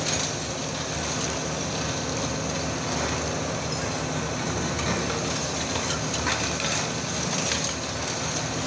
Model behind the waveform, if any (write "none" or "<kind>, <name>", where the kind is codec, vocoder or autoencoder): none